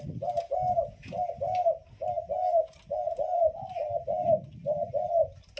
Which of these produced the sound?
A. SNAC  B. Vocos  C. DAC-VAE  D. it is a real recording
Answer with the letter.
D